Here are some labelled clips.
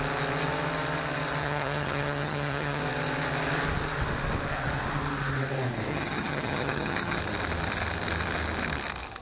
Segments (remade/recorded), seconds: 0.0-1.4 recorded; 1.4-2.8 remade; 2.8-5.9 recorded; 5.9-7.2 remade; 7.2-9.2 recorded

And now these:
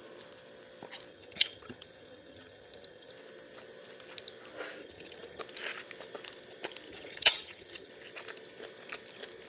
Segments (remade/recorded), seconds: 0.0-1.1 recorded; 1.1-3.1 remade; 3.1-4.8 recorded; 4.8-5.4 remade; 5.4-6.9 recorded; 6.9-7.9 remade; 7.9-9.5 recorded

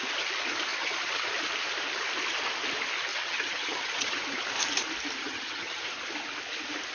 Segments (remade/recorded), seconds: 0.0-0.7 recorded; 0.7-1.3 remade; 1.3-3.1 recorded; 3.1-4.2 remade; 4.2-5.2 recorded; 5.2-5.8 remade; 5.8-6.9 recorded